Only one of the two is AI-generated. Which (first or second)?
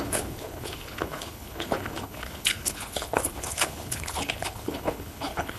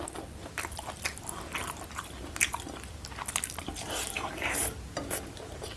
first